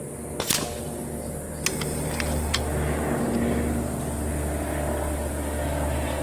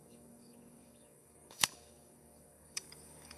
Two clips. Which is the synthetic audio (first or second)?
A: second